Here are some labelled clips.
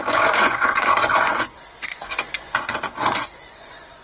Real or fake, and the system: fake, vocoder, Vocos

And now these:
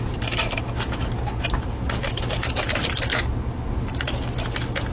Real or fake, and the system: fake, vocoder, BigVGAN v2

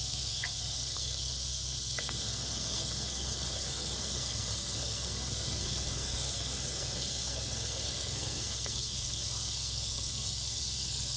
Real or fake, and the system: fake, codec, SNAC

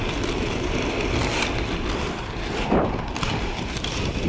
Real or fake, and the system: real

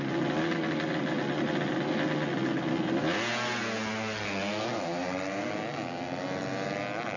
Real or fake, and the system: real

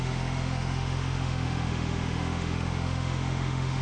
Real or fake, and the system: fake, autoencoder, DAC-VAE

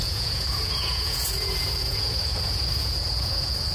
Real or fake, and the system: fake, vocoder, Vocos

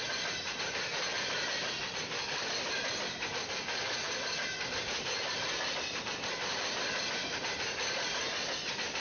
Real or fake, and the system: real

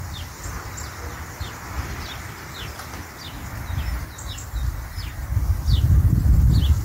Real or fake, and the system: real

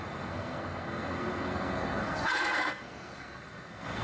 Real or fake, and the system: fake, codec, SNAC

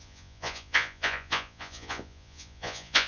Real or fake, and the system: fake, vocoder, Vocos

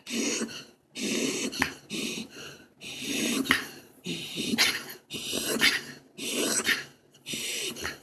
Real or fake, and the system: real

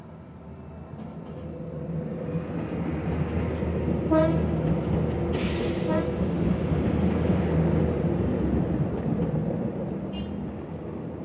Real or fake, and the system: real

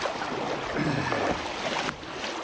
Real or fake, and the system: real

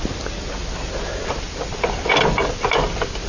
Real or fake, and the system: real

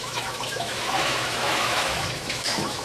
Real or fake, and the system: fake, autoencoder, DAC-VAE